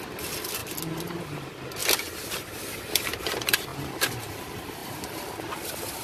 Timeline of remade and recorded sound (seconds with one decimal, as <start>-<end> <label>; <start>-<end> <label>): 0.0-0.6 recorded; 0.6-1.2 remade; 1.2-4.8 recorded; 4.8-5.5 remade; 5.5-6.0 recorded